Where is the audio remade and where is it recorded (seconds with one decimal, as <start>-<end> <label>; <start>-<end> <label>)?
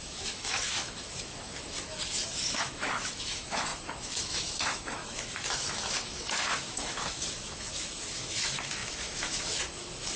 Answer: 0.0-10.2 remade